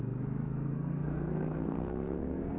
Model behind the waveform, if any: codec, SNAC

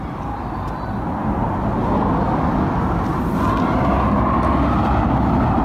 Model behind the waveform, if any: none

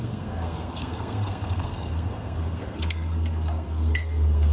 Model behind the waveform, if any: codec, SNAC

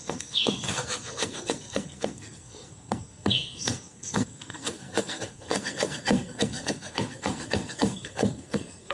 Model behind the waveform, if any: codec, SNAC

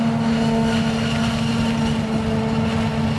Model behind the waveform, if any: none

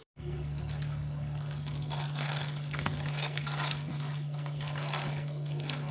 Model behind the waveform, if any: codec, SNAC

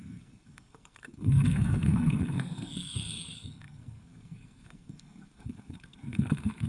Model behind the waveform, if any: codec, SNAC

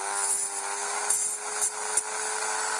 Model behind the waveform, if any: none